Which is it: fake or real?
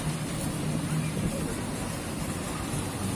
fake